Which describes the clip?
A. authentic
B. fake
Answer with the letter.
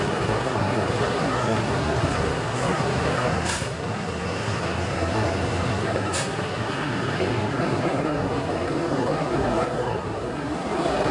B